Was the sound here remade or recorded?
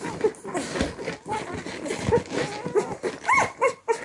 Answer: recorded